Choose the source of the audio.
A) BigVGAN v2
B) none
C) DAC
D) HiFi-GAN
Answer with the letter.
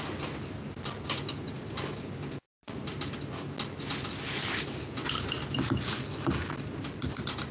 B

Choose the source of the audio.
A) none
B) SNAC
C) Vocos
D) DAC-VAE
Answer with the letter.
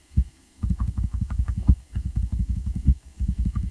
B